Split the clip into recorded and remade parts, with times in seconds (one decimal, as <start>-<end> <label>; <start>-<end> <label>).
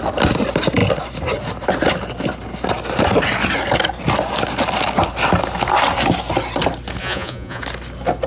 0.0-7.0 recorded; 7.0-7.6 remade; 7.6-8.3 recorded